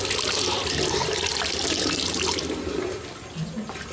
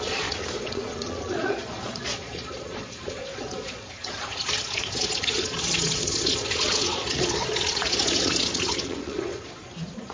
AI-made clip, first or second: second